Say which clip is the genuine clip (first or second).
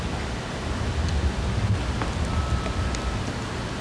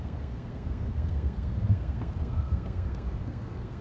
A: first